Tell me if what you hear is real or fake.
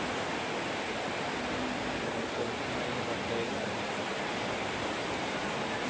real